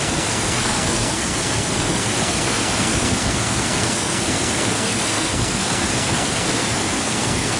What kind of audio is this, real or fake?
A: fake